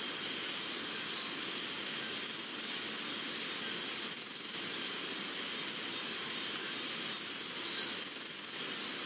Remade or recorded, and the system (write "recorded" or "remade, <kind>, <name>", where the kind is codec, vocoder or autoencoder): recorded